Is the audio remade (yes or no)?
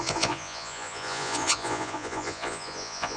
yes